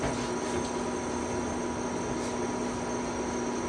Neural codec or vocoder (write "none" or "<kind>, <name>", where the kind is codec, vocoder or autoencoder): none